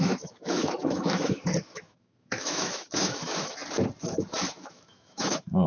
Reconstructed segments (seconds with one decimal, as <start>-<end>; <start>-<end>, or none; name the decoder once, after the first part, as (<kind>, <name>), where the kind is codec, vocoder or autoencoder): 0.0-3.6 (autoencoder, DAC-VAE); 4.5-5.7